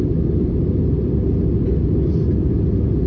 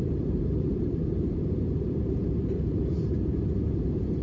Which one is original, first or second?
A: first